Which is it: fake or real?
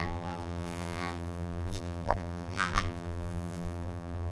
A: fake